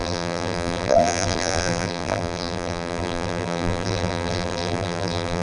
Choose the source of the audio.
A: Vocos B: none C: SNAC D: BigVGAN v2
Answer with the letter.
D